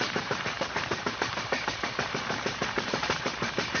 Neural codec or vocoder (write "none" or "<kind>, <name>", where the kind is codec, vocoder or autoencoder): vocoder, BigVGAN v2